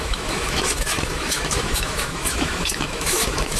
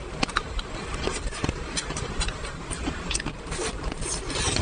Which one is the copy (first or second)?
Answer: first